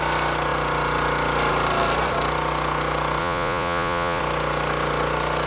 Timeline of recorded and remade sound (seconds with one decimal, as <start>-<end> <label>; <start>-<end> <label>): 0.0-3.2 recorded; 3.2-4.2 remade; 4.2-5.5 recorded